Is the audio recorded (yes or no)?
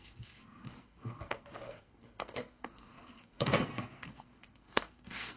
no